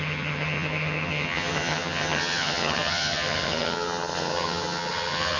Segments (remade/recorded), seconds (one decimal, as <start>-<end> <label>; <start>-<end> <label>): 0.0-5.4 remade